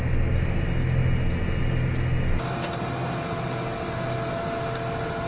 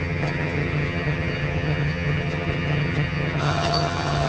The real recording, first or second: first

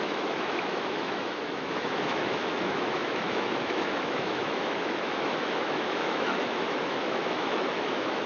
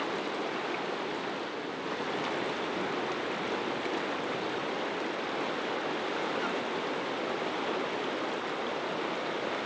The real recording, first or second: second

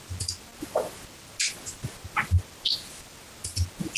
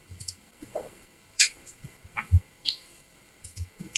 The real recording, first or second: first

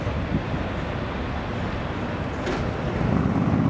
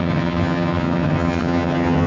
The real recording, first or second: first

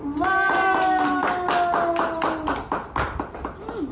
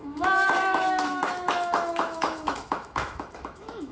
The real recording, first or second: first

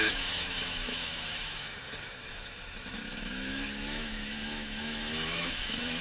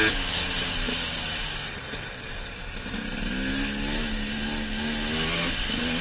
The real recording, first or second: second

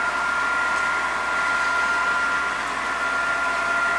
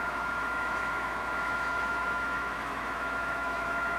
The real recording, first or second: first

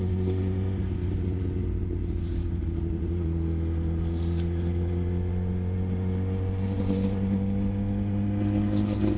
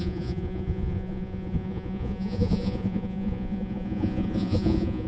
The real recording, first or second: first